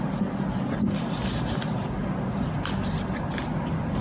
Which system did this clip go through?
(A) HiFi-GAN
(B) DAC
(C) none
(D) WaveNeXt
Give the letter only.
C